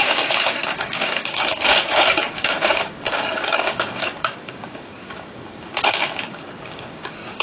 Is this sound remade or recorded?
remade